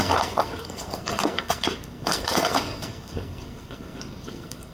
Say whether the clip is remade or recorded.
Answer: remade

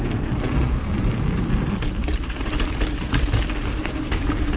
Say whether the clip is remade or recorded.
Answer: recorded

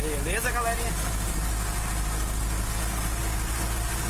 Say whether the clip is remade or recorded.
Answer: recorded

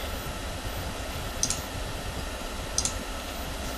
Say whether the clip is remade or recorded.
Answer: recorded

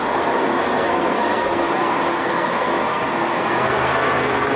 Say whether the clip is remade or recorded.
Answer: remade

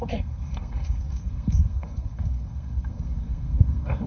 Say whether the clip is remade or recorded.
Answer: remade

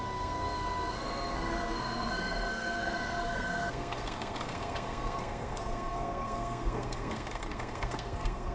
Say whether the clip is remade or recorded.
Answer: remade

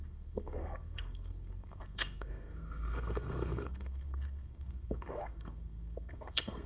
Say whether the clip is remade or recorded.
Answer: remade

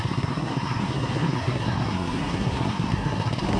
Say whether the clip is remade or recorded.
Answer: remade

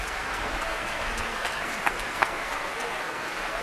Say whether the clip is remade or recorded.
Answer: remade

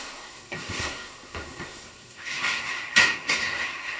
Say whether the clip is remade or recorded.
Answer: remade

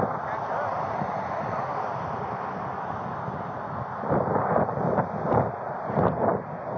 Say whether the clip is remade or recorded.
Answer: recorded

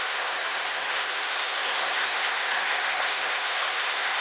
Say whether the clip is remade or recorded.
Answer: remade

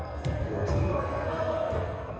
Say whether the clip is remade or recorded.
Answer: remade